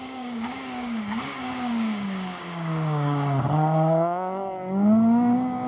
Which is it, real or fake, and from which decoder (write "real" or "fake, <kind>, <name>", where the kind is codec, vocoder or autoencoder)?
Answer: fake, codec, DAC